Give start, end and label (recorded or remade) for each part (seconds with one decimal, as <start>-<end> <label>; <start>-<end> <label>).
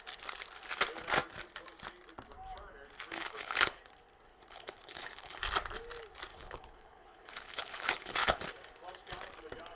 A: 0.0-3.1 recorded; 3.1-3.8 remade; 3.8-4.3 recorded; 4.3-5.4 remade; 5.4-6.3 recorded; 6.3-8.4 remade; 8.4-9.8 recorded